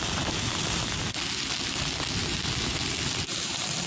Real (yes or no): yes